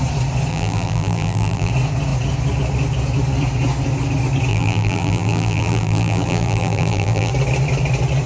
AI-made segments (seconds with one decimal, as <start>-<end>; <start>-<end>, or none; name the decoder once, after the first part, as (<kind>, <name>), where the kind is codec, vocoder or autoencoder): 0.5-1.7 (vocoder, BigVGAN v2); 4.5-7.3